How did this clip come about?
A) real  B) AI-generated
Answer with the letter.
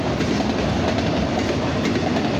A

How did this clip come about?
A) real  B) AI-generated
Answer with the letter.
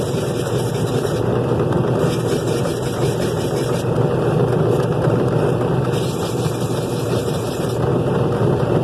B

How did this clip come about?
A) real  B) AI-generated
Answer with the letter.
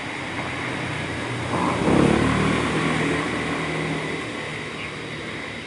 A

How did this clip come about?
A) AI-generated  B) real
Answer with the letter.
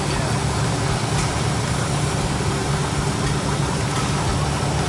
B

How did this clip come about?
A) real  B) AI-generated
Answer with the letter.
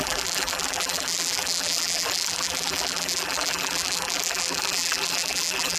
B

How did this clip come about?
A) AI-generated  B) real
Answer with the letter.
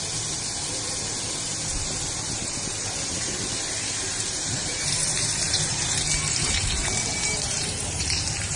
A